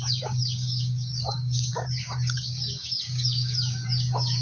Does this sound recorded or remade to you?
remade